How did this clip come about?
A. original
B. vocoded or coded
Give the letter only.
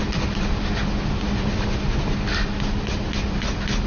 A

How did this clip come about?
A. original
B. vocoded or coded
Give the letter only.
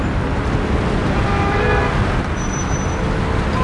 A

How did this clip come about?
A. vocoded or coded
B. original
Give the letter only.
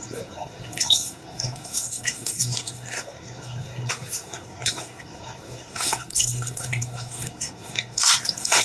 A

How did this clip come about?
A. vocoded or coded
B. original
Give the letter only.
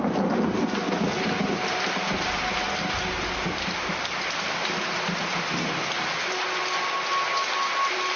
B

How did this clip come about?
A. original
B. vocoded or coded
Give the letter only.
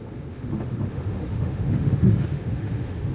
B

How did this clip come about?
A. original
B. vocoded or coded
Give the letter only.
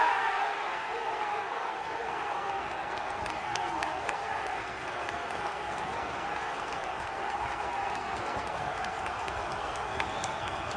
B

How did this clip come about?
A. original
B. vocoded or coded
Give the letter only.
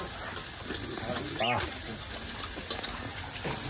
A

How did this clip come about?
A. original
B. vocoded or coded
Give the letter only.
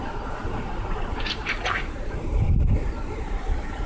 B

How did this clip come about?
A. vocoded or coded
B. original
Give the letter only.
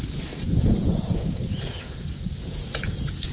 A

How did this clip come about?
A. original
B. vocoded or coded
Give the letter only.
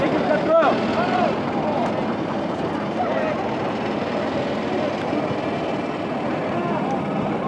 A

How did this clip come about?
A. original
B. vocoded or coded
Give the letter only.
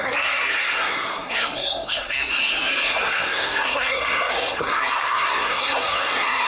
B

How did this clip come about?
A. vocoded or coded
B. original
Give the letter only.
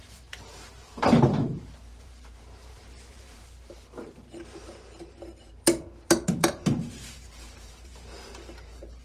A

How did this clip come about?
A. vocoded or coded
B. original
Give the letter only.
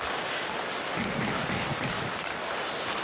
B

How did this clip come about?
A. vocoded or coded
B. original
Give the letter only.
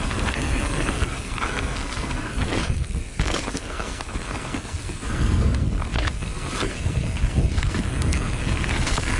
A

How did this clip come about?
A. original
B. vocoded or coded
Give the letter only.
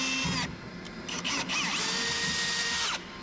A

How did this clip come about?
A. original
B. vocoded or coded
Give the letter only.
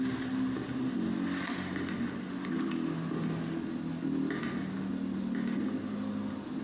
A